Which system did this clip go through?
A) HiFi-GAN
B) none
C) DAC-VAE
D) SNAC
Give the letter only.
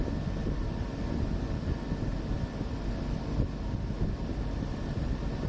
B